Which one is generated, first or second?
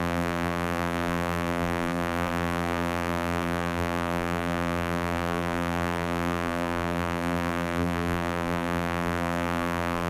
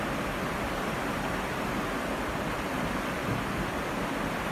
first